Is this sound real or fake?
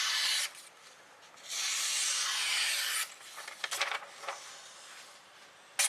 real